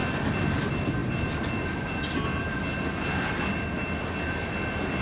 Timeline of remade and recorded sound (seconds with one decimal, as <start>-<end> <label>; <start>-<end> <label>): 0.0-5.0 recorded